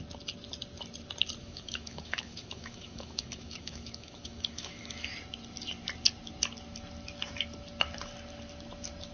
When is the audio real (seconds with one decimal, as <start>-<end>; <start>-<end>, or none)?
0.0-1.4; 5.1-9.1